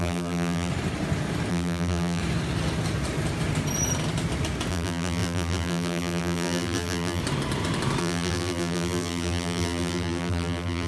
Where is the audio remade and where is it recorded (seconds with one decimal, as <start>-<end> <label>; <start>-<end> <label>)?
0.0-0.7 remade; 0.7-1.5 recorded; 1.5-2.2 remade; 2.2-4.7 recorded; 4.7-7.2 remade; 7.2-8.0 recorded; 8.0-10.9 remade